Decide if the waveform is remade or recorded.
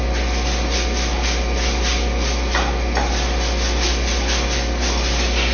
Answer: recorded